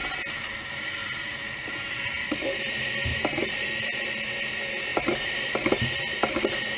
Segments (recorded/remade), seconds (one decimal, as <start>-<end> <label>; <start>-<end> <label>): 0.0-1.0 recorded; 1.0-1.7 remade; 1.7-3.1 recorded; 3.1-4.0 remade; 4.0-6.8 recorded